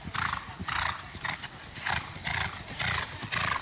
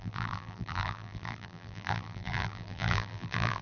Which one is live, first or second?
first